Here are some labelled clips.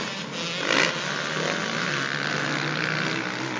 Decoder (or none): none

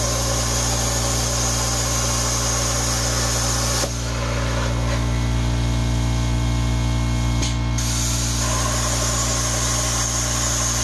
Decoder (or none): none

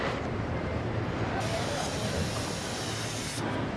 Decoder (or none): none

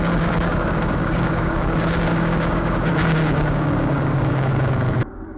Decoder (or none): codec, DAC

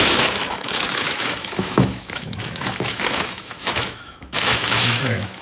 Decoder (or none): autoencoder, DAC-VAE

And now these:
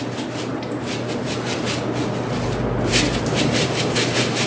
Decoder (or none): none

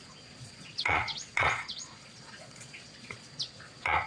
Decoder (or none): vocoder, Vocos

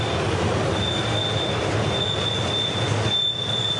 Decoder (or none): none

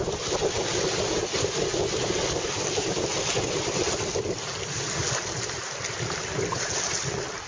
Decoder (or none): none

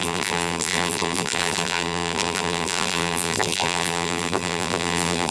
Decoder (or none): vocoder, BigVGAN v2